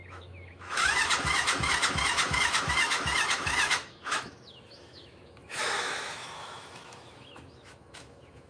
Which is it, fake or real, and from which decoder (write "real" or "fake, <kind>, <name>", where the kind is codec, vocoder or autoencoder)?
fake, autoencoder, DAC-VAE